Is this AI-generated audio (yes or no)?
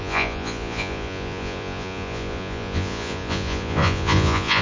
yes